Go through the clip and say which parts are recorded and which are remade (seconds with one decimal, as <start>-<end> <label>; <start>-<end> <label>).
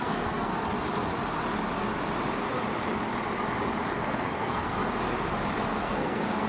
0.0-0.5 remade; 0.5-3.9 recorded; 3.9-4.8 remade; 4.8-5.7 recorded; 5.7-6.5 remade